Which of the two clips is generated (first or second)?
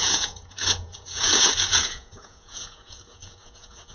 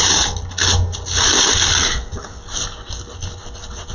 first